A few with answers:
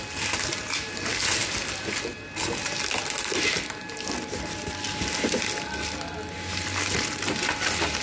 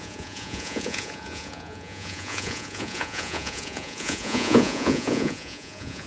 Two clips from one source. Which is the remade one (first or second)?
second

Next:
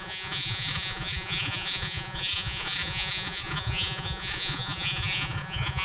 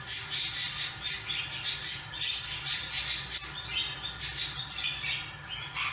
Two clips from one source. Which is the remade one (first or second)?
first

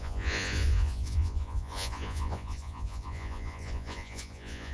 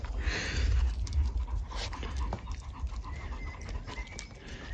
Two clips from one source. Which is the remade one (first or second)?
first